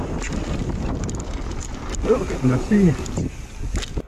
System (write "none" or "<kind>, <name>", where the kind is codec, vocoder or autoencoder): none